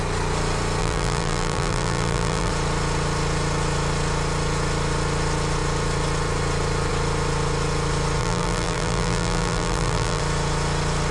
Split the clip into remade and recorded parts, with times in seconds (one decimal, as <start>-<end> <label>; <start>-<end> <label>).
0.0-0.8 recorded; 0.8-2.5 remade; 2.5-8.2 recorded; 8.2-10.2 remade; 10.2-11.1 recorded